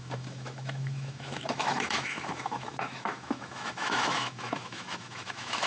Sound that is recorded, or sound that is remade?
remade